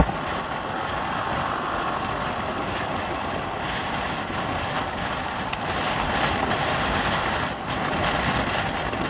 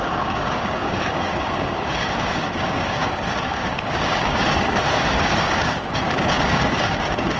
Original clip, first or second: first